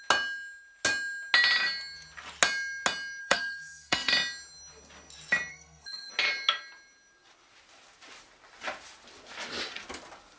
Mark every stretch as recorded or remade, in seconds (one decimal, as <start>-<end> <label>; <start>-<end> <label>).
0.0-3.2 recorded; 3.2-4.1 remade; 4.1-5.5 recorded; 5.5-6.1 remade; 6.1-10.4 recorded